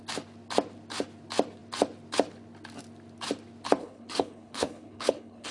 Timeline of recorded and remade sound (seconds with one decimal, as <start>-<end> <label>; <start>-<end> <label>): 0.0-3.8 recorded; 3.8-5.5 remade